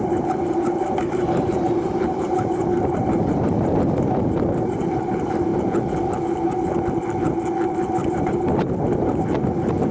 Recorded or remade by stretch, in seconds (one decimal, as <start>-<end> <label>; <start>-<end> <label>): 0.0-5.5 remade; 5.5-8.1 recorded; 8.1-9.9 remade